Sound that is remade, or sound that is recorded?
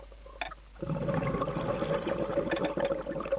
recorded